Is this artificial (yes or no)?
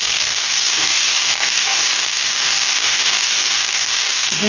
yes